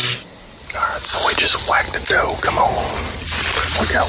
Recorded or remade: recorded